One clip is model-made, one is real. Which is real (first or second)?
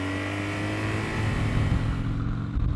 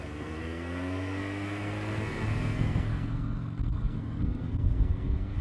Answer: first